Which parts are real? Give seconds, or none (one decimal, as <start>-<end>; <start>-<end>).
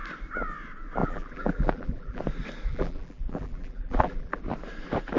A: 0.0-1.0; 2.2-2.7; 4.4-5.2